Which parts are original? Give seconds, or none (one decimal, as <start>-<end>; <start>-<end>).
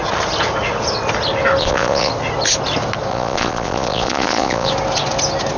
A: 0.0-1.6; 2.1-3.1; 4.7-5.6